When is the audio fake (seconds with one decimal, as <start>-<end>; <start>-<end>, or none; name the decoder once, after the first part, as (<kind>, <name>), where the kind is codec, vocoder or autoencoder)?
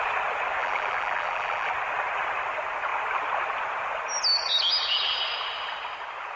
0.6-1.7 (vocoder, BigVGAN v2)